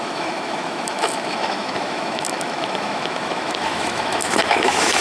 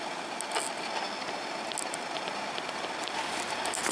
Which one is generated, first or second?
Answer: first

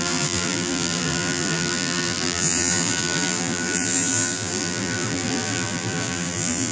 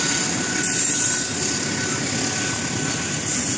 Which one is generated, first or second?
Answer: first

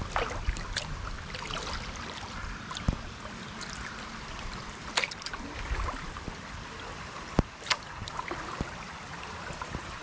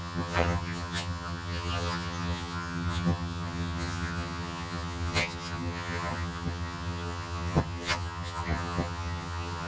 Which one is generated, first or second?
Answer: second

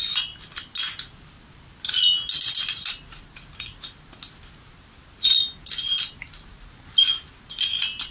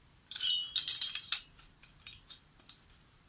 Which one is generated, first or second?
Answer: second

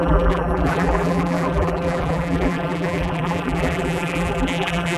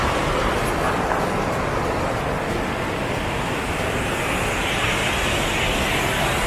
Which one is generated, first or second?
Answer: first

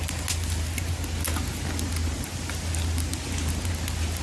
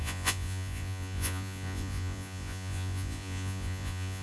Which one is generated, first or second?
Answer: second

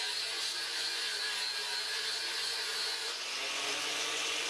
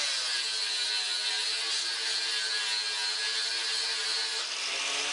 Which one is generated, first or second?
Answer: first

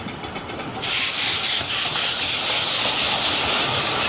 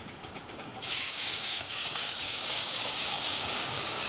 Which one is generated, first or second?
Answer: second